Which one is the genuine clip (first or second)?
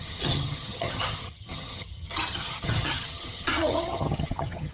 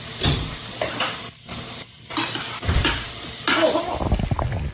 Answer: second